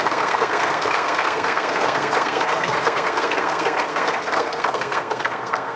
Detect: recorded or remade remade